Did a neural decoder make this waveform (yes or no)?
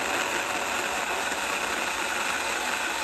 no